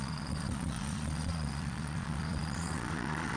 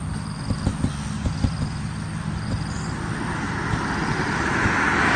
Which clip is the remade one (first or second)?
first